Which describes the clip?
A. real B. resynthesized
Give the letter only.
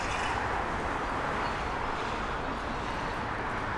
A